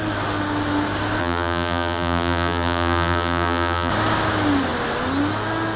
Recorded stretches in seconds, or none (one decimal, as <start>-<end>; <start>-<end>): 0.0-1.2; 3.9-5.8